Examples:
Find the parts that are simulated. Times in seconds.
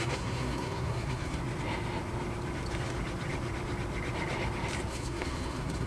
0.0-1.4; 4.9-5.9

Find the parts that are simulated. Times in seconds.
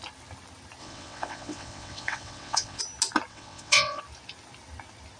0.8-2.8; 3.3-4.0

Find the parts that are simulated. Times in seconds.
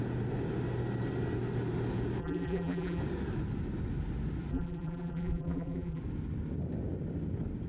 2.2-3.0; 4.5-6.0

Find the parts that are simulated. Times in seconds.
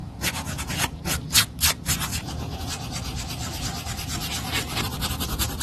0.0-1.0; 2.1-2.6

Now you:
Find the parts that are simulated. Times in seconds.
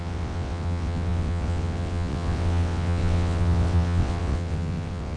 0.0-5.2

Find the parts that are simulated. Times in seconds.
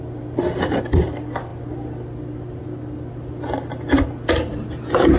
none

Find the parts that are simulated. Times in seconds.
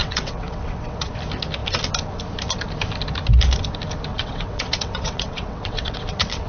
0.0-1.1; 4.1-6.5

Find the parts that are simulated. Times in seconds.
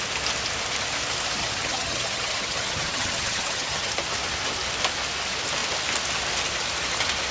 1.4-3.9